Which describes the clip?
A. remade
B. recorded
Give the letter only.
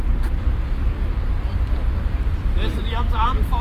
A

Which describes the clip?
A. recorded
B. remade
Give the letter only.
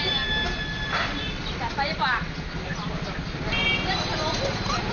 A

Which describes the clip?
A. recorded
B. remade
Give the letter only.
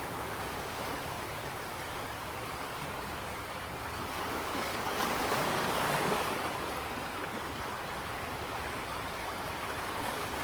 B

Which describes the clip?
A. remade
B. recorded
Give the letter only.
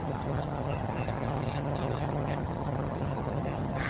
A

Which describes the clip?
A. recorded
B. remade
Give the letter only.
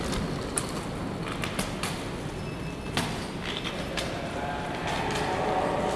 A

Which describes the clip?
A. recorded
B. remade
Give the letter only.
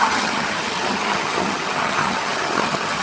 B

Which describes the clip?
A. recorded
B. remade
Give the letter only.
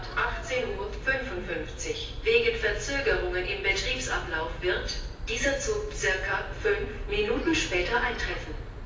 A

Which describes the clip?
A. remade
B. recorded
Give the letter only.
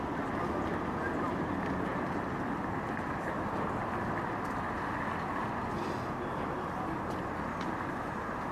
B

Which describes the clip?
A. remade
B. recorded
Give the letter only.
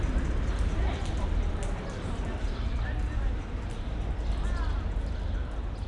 B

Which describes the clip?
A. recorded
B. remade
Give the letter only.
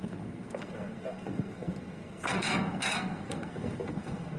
B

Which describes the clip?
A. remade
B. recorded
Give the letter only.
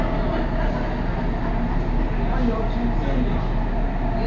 B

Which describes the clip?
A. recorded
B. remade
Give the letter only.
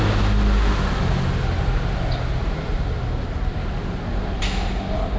A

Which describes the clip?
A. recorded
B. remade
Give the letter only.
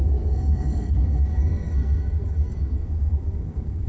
B